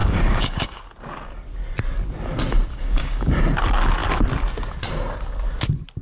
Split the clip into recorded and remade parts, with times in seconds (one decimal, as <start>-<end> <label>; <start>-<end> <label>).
0.0-0.8 remade; 0.8-2.7 recorded; 2.7-3.4 remade; 3.4-6.0 recorded